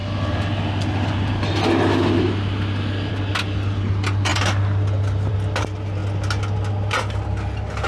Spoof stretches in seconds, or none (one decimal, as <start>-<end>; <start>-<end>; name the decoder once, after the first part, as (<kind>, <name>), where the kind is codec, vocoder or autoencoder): none